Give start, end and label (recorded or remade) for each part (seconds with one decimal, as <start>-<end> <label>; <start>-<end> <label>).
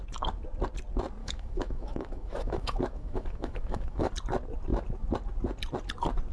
0.0-1.2 recorded; 1.2-4.1 remade; 4.1-6.3 recorded